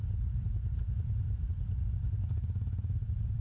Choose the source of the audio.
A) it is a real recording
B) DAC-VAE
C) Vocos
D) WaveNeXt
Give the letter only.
A